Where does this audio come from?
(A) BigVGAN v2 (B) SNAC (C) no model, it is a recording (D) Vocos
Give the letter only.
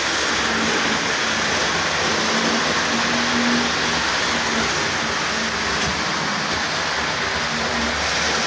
C